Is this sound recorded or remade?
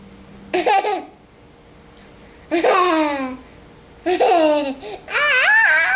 recorded